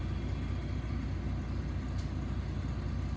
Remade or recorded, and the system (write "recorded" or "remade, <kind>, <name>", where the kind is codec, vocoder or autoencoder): recorded